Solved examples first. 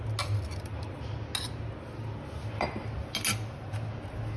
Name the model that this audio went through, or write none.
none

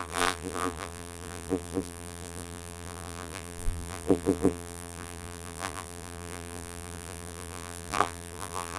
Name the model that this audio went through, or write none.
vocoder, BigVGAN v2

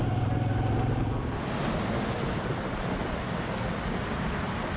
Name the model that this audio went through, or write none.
none